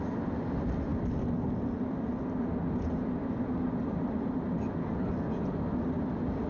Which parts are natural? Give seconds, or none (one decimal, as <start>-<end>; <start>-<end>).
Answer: 0.0-6.5